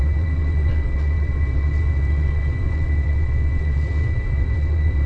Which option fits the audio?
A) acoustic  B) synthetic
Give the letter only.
B